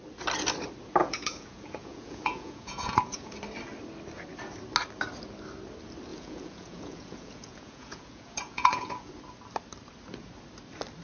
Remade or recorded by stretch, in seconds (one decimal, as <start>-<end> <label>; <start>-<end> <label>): 0.0-1.0 recorded; 1.0-3.4 remade; 3.4-6.1 recorded; 6.1-9.1 remade; 9.1-11.0 recorded